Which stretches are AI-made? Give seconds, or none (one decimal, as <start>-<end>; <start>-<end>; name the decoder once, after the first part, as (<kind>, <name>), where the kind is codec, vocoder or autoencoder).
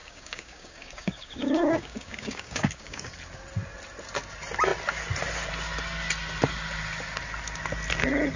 0.0-3.1 (codec, DAC)